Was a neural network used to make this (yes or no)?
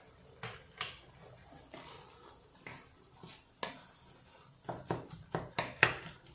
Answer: no